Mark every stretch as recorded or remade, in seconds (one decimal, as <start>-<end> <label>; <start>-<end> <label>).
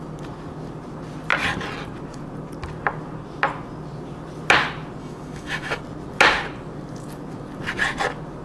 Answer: 0.0-5.0 recorded; 5.0-5.8 remade; 5.8-8.4 recorded